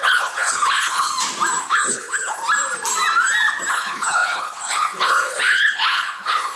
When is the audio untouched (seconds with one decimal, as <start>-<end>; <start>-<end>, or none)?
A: 1.1-1.6; 2.4-3.7